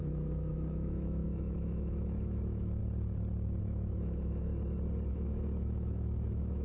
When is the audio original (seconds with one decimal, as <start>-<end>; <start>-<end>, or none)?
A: 2.8-3.6; 4.5-5.1